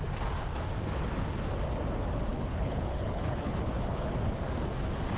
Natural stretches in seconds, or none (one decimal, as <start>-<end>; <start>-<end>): 0.0-2.3; 4.1-5.2